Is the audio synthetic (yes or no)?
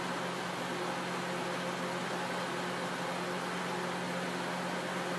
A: no